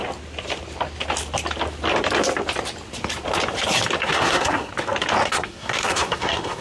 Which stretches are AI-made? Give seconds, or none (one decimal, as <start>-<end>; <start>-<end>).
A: 4.0-4.7; 5.3-6.6